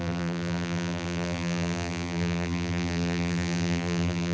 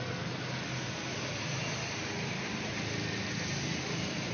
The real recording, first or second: second